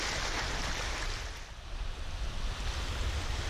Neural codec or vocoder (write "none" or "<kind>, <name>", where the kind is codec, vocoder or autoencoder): none